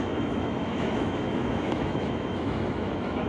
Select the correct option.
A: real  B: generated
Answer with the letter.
B